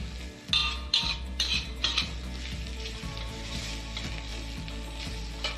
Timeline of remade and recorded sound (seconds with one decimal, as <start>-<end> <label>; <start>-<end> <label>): 0.0-0.6 recorded; 0.6-2.0 remade; 2.0-3.1 recorded; 3.1-3.6 remade; 3.6-5.6 recorded